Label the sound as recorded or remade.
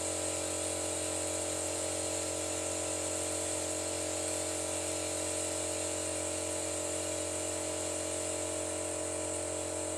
recorded